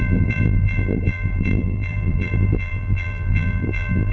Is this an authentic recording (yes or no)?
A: no